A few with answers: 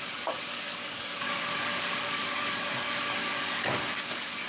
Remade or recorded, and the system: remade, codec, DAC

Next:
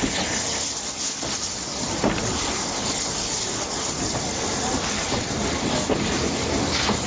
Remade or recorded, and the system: recorded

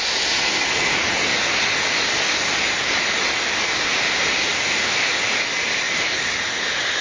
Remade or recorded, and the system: recorded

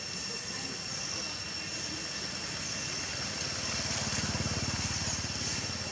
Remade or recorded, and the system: recorded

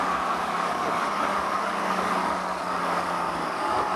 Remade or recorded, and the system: remade, codec, DAC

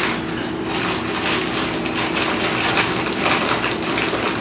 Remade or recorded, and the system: recorded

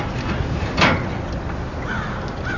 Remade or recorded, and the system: recorded